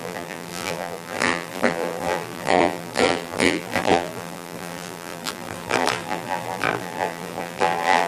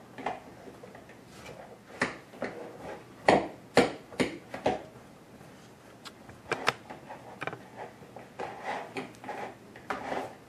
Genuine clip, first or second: second